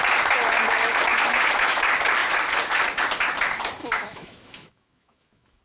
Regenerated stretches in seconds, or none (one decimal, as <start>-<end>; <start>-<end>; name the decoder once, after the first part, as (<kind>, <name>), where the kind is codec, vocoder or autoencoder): 1.1-1.8 (autoencoder, DAC-VAE); 3.8-5.6